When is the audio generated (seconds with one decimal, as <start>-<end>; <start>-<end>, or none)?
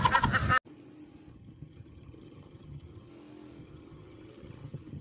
1.3-3.1; 3.6-5.0